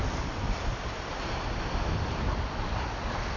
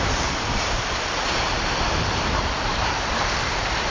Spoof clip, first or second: second